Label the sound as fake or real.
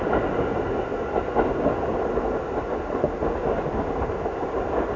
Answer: real